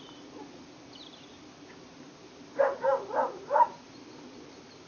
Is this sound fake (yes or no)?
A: no